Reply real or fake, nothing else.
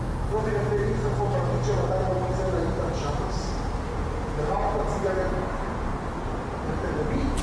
real